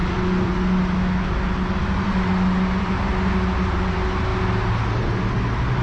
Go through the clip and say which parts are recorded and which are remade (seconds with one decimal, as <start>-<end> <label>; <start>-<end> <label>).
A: 0.0-5.8 recorded

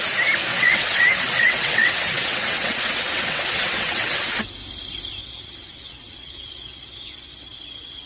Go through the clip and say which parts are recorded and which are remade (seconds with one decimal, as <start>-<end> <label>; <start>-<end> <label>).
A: 0.0-0.5 recorded; 0.5-4.4 remade; 4.4-5.2 recorded; 5.2-8.1 remade

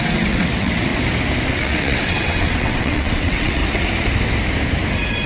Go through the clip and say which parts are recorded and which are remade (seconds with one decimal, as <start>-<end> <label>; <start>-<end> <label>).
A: 0.0-0.9 remade; 0.9-1.5 recorded; 1.5-3.6 remade; 3.6-5.3 recorded

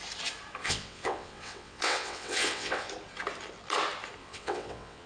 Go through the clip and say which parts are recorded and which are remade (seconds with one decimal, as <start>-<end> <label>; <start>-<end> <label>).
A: 0.0-0.6 recorded; 0.6-2.9 remade; 2.9-4.2 recorded; 4.2-5.1 remade

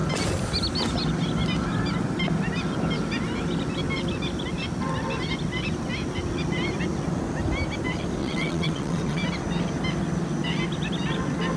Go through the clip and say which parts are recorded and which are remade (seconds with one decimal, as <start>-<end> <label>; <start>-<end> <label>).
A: 0.0-8.2 recorded; 8.2-9.2 remade; 9.2-11.6 recorded

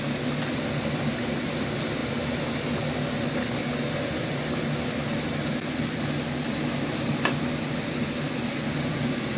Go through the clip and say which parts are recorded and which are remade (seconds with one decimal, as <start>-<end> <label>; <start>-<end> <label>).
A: 0.0-9.4 recorded

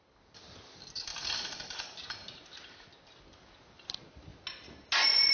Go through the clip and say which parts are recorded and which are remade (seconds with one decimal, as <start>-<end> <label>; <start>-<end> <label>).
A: 0.0-5.3 recorded